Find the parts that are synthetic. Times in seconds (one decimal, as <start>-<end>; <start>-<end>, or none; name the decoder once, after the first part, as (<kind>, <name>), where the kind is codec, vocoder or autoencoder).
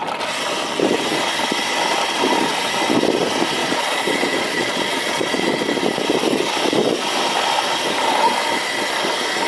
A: 3.6-5.6 (vocoder, Vocos)